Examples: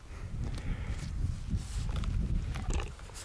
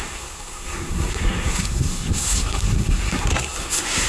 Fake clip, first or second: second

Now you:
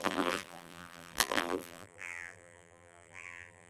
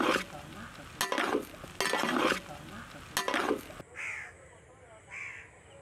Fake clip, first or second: first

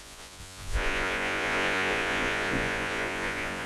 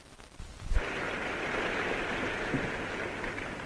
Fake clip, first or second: first